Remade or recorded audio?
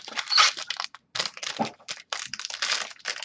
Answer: recorded